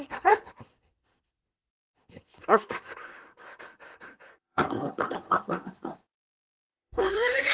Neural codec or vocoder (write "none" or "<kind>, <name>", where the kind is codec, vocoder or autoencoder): codec, SNAC